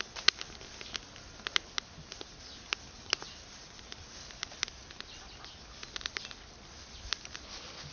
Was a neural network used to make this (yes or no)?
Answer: no